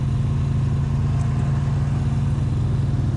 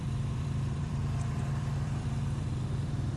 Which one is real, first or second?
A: first